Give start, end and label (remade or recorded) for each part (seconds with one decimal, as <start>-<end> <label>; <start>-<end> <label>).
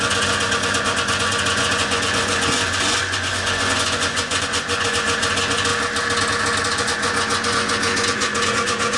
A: 0.0-5.7 remade; 5.7-6.6 recorded; 6.6-9.0 remade